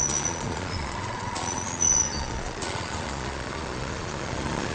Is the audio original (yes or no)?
no